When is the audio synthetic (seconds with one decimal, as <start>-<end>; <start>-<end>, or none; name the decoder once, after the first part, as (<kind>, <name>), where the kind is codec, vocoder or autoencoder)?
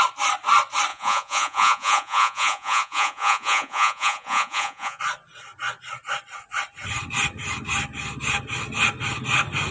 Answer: 0.9-5.0 (vocoder, Vocos)